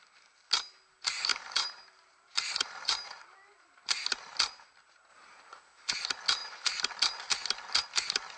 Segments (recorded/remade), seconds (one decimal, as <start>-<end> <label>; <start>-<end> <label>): 0.0-1.3 recorded; 1.3-3.8 remade; 3.8-5.1 recorded; 5.1-5.9 remade; 5.9-8.4 recorded